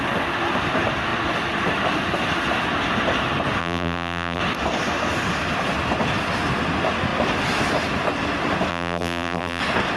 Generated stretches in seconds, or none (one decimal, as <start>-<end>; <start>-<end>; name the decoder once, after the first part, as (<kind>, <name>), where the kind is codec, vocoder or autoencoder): 3.6-4.4 (vocoder, BigVGAN v2); 8.7-9.6